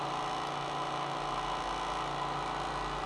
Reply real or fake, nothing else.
real